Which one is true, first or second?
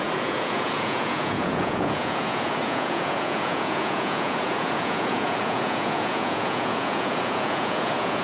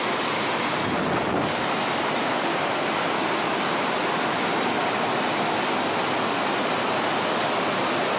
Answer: second